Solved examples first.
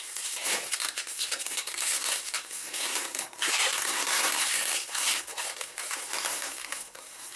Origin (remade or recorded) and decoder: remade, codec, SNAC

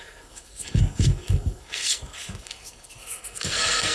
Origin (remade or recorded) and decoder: remade, codec, SNAC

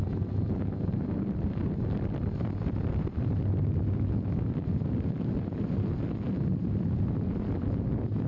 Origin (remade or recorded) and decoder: recorded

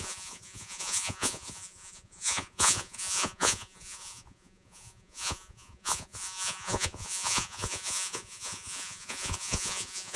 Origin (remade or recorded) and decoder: remade, vocoder, Vocos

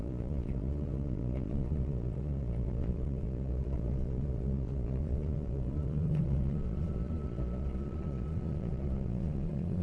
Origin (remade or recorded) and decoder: remade, vocoder, Vocos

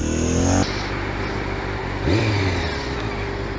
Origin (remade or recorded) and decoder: recorded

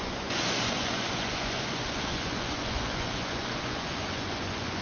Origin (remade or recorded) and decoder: remade, vocoder, Vocos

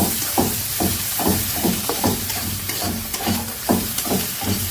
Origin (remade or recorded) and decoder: remade, vocoder, BigVGAN v2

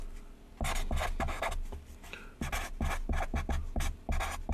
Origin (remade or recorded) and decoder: recorded